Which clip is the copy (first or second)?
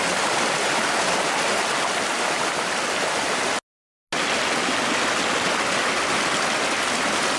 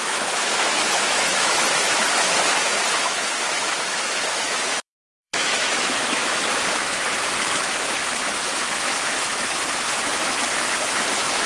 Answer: second